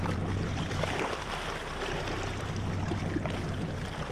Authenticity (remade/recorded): remade